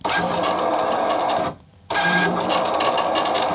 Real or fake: fake